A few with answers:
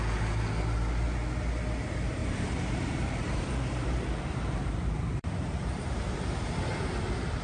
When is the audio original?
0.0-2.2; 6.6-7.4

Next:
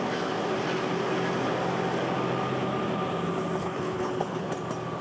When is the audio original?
0.0-3.6; 4.5-5.0

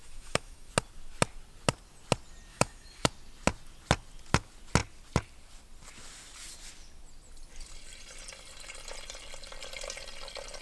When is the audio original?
0.7-2.5; 3.1-10.6

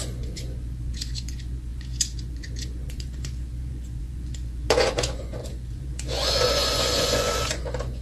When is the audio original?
none

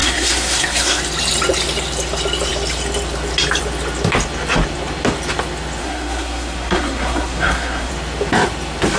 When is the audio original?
1.0-5.8; 7.9-9.0

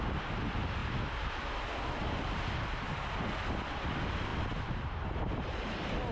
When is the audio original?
none

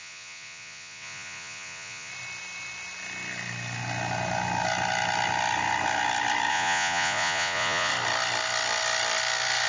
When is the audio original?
2.1-6.5; 7.9-9.7

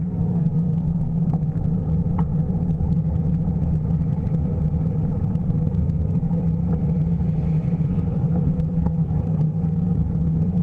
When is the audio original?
1.4-5.4; 6.4-7.8